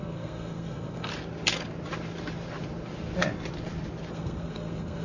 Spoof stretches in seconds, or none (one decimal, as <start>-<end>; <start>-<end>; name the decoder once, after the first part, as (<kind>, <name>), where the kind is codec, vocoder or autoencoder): 0.0-1.1 (codec, SNAC); 4.1-5.0